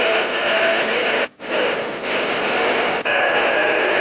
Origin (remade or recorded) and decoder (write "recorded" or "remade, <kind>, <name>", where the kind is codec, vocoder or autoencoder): recorded